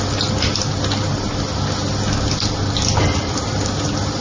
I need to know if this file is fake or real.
real